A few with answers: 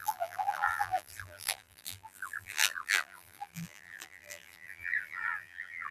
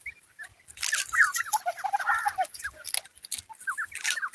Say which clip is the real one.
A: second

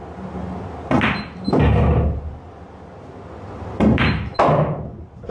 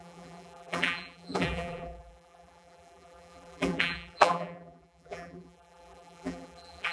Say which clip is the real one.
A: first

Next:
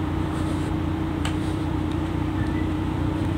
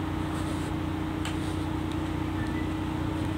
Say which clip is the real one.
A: second